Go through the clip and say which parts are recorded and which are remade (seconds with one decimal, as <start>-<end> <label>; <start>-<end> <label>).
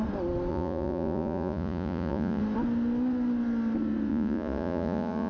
0.0-0.5 recorded; 0.5-2.4 remade; 2.4-4.1 recorded; 4.1-5.3 remade